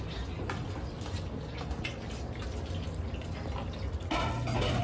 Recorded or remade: recorded